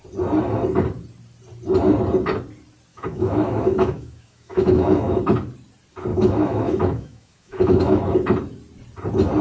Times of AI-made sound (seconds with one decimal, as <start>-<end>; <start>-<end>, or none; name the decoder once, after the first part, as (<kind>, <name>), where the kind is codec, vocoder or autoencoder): 2.9-5.2 (autoencoder, DAC-VAE); 6.1-8.0